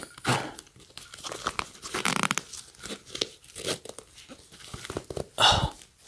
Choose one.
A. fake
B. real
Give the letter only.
B